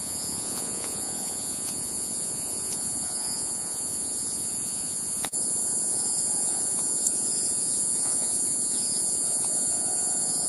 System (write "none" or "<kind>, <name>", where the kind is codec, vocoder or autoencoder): vocoder, Vocos